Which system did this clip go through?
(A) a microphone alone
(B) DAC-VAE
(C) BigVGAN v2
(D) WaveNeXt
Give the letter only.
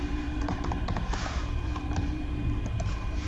C